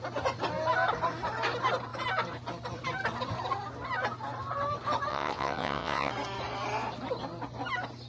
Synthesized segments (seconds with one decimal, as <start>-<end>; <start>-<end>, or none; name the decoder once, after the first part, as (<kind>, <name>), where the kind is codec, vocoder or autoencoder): 5.1-6.1 (vocoder, WaveNeXt)